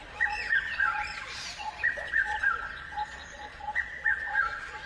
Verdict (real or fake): fake